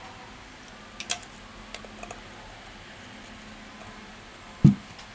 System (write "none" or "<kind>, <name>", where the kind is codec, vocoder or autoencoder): none